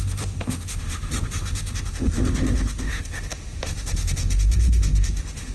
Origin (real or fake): fake